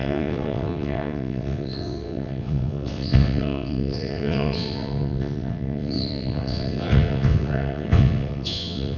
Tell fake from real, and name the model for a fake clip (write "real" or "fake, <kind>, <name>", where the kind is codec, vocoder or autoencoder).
fake, vocoder, WaveNeXt